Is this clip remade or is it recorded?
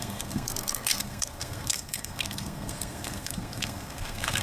remade